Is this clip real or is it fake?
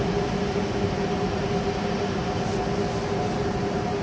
real